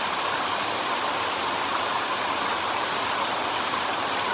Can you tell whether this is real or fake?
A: real